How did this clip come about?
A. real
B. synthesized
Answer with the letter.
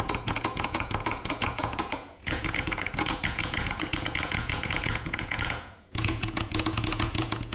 B